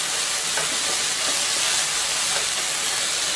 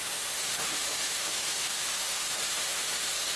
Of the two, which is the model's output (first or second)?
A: second